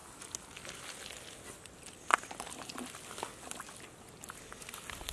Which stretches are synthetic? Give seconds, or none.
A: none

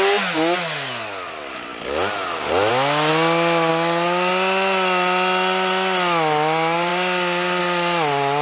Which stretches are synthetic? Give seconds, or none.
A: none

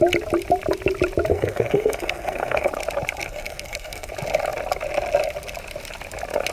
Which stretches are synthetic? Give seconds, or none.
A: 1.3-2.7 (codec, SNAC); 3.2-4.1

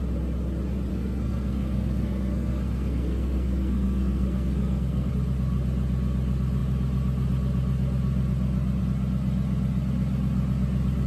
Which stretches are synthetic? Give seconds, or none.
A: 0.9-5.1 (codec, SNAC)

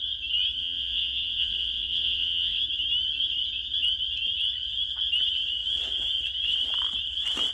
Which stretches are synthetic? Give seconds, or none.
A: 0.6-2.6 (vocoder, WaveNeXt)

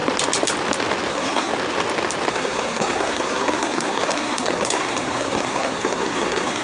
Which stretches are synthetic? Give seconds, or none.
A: 1.1-1.5 (codec, SNAC); 2.3-6.6

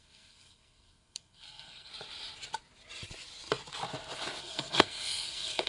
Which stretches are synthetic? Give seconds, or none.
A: 0.0-1.9 (codec, SNAC); 4.4-5.7